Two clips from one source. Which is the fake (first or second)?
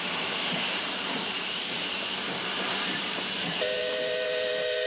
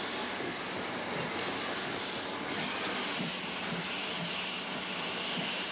first